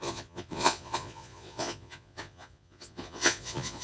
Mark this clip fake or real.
fake